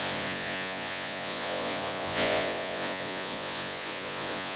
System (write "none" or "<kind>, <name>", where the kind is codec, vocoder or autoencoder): vocoder, Vocos